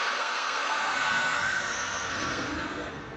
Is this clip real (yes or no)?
no